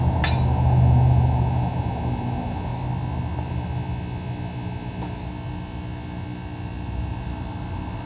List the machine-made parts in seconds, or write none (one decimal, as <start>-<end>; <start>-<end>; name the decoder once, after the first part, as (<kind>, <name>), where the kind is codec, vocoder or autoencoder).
none

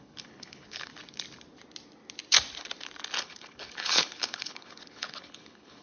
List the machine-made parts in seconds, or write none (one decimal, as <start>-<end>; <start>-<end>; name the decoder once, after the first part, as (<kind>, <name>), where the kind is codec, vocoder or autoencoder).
0.0-0.9 (codec, HILCodec); 3.2-5.8

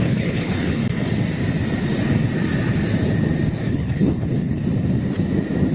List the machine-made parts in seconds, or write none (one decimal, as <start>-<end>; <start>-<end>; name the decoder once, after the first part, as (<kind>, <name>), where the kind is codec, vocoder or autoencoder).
0.0-0.8 (codec, HILCodec); 3.7-4.6

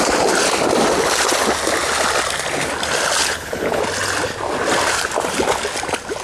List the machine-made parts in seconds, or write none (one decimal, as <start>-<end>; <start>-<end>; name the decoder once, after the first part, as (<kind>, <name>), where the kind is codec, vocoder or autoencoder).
3.2-3.8 (codec, HILCodec)

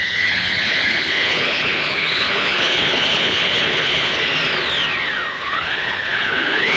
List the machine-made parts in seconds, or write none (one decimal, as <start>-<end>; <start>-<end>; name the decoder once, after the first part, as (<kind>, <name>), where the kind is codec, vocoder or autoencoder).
0.0-4.3 (codec, HILCodec); 5.3-6.8